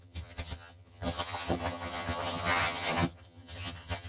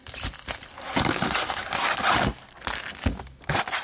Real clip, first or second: second